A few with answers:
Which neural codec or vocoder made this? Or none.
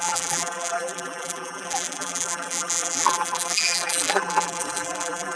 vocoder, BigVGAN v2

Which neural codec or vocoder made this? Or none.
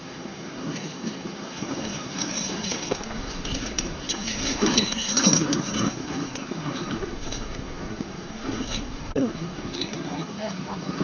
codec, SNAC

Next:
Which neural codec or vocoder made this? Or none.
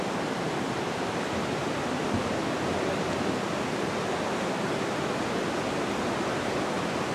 none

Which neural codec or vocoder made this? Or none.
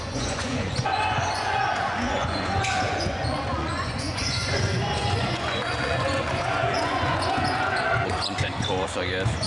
vocoder, Vocos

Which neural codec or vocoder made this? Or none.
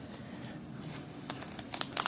none